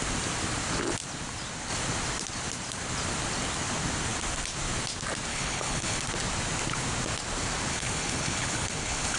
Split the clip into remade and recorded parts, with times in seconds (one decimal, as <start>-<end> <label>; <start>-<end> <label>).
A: 0.0-5.3 recorded; 5.3-6.0 remade; 6.0-7.7 recorded; 7.7-9.2 remade